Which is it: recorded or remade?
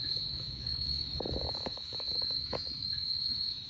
remade